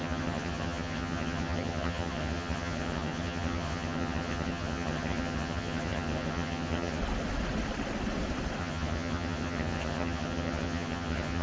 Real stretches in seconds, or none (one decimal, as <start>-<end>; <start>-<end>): 7.0-8.6